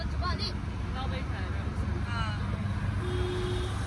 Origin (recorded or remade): recorded